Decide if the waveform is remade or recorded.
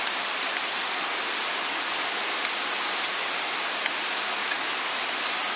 recorded